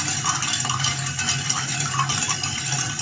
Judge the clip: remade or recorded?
remade